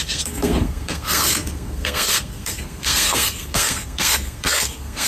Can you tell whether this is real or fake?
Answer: fake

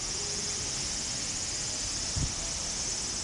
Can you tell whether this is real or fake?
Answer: real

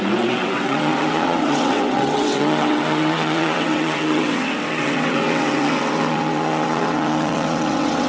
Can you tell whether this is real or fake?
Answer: fake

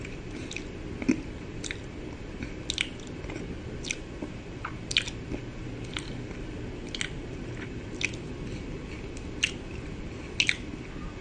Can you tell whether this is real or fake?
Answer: real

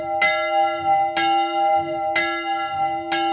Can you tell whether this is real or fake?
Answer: real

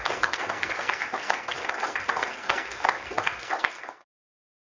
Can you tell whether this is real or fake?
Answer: fake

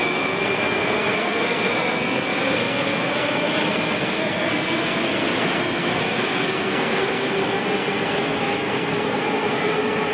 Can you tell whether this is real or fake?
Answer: fake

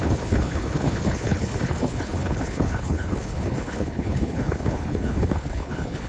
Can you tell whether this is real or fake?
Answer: fake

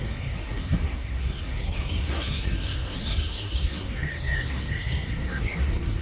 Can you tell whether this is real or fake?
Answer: fake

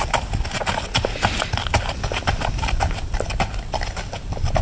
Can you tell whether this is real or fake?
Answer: real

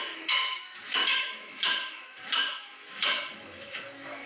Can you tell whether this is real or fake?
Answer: fake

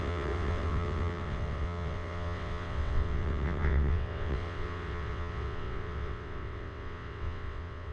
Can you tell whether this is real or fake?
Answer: fake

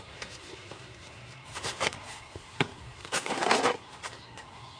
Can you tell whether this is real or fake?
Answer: fake